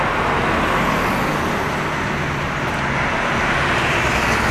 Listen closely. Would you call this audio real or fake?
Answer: real